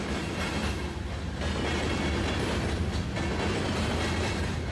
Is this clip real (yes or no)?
yes